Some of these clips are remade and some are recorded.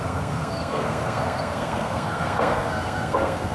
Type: remade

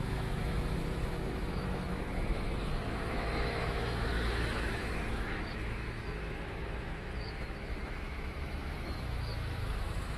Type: remade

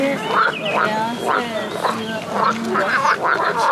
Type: recorded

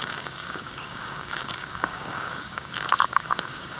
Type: remade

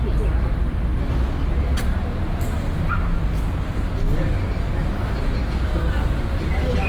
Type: recorded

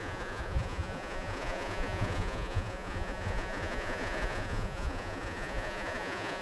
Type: remade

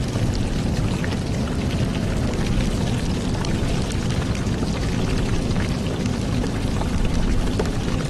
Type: remade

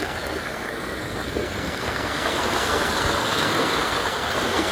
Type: remade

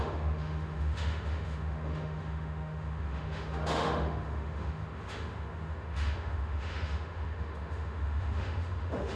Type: remade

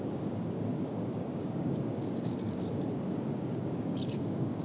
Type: remade